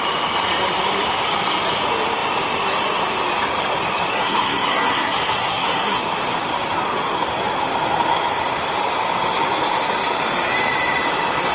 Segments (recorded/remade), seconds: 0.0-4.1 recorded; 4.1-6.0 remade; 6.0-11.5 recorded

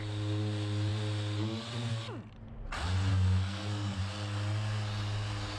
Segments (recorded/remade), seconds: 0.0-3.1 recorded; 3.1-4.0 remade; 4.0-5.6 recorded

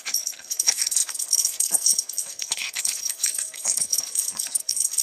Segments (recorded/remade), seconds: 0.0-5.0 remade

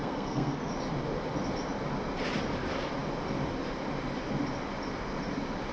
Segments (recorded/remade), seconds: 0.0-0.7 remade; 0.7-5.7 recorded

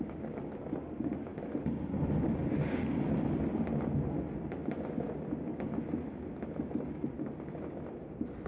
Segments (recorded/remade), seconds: 0.0-8.5 recorded